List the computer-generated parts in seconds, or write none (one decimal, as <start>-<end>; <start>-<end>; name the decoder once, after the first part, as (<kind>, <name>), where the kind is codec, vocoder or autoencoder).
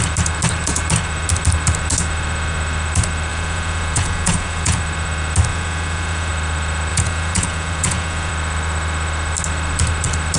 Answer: 3.3-4.8 (vocoder, Vocos); 5.5-6.3; 6.9-8.3